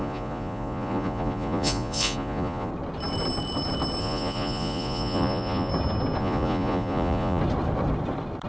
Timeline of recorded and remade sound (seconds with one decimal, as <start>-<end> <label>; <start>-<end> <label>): 0.0-2.7 remade; 2.7-4.0 recorded; 4.0-5.7 remade; 5.7-6.2 recorded; 6.2-7.4 remade; 7.4-8.5 recorded